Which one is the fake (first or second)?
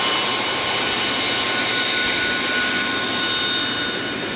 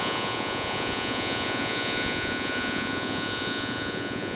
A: second